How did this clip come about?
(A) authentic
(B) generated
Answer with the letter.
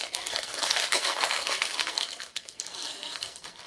B